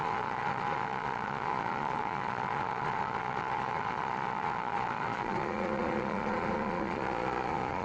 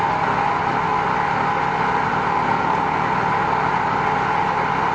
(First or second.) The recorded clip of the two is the second